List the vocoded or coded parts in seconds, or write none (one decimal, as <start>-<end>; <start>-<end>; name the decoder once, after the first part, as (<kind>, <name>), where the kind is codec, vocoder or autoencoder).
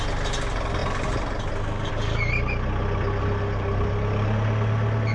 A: none